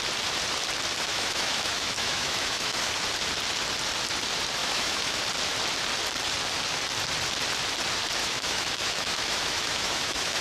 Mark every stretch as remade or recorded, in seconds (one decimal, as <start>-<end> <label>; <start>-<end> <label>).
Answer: 0.0-1.1 recorded; 1.1-2.9 remade; 2.9-4.6 recorded; 4.6-5.2 remade; 5.2-8.2 recorded; 8.2-10.4 remade